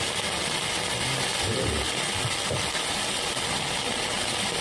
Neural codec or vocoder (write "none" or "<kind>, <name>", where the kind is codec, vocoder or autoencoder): none